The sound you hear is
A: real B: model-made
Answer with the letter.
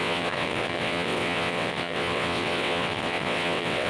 B